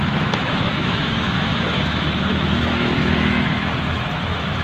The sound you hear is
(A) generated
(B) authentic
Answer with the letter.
A